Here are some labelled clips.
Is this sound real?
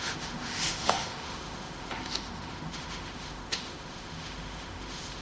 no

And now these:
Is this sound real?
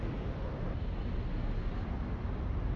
yes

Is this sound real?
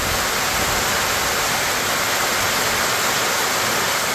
yes